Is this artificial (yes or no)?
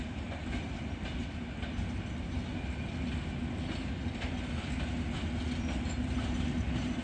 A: no